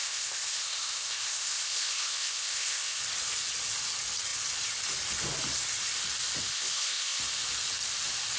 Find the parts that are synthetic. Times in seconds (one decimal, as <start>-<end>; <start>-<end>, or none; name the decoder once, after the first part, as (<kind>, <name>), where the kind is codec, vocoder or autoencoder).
0.0-3.0 (codec, ZipCodec); 6.5-7.2